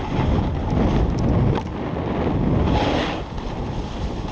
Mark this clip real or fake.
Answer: real